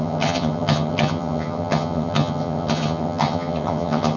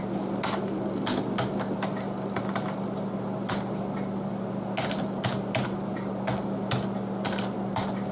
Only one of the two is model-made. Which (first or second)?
first